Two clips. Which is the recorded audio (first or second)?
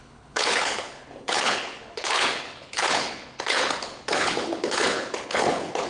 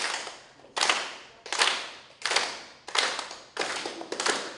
second